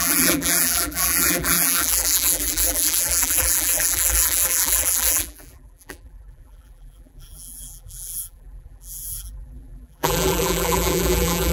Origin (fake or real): fake